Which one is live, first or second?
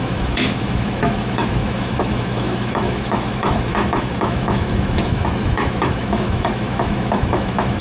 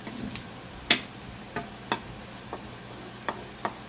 second